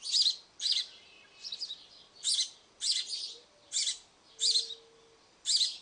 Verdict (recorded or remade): remade